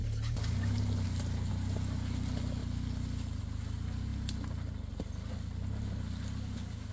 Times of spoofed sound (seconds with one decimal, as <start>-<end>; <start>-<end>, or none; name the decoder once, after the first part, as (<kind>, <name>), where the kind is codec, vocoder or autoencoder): none